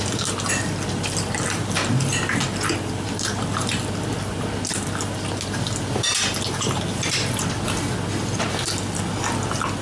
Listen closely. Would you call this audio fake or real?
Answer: real